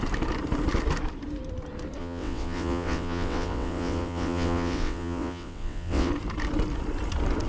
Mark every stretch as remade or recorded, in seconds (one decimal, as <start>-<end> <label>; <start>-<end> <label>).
0.0-2.0 recorded; 2.0-6.1 remade; 6.1-7.5 recorded